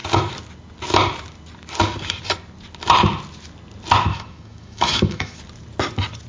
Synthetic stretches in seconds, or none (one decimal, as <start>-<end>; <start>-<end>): 4.1-5.4